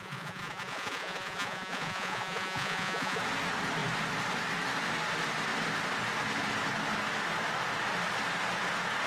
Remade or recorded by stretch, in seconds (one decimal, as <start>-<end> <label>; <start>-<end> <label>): 0.0-3.2 remade; 3.2-9.1 recorded